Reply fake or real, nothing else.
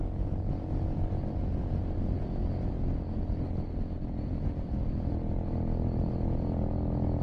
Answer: real